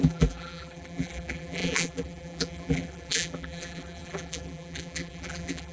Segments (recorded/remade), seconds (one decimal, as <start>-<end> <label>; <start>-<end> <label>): 0.0-5.7 remade